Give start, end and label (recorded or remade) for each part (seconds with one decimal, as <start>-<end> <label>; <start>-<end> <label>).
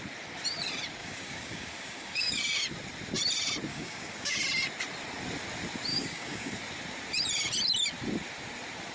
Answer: 0.0-1.0 recorded; 1.0-2.4 remade; 2.4-3.7 recorded; 3.7-4.4 remade; 4.4-5.9 recorded; 5.9-6.6 remade; 6.6-8.9 recorded